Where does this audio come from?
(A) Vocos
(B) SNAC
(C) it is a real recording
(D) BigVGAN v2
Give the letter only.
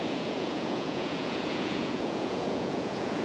A